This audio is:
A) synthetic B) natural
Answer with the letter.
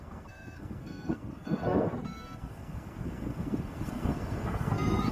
A